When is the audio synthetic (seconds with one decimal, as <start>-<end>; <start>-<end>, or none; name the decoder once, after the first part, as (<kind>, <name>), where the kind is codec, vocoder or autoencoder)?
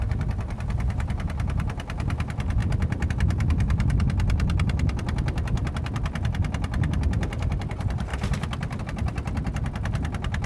none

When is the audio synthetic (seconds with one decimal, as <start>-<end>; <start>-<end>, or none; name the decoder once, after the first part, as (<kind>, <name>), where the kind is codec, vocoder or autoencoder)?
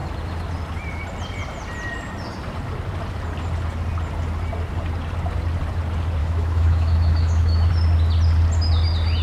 6.2-7.7 (autoencoder, DAC-VAE)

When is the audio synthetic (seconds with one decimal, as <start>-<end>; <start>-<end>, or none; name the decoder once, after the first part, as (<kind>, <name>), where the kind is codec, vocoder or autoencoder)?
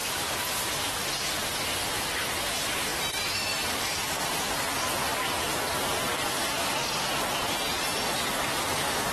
none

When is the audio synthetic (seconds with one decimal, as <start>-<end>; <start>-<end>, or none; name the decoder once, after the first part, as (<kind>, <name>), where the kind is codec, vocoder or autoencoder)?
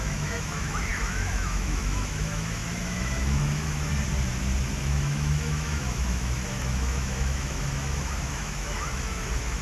0.0-3.9 (autoencoder, DAC-VAE); 4.8-9.6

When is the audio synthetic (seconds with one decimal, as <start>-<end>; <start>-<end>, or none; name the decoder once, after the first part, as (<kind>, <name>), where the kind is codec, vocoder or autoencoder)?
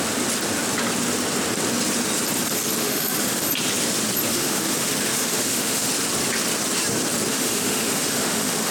2.8-3.4 (autoencoder, DAC-VAE); 4.3-5.9; 7.3-8.7